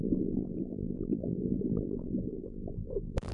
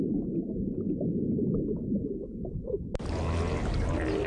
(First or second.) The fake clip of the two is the first